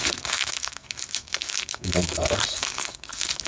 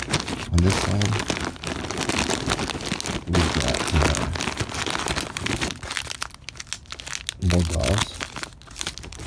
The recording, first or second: second